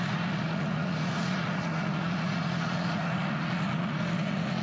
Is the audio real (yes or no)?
no